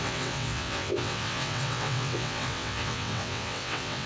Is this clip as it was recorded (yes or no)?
no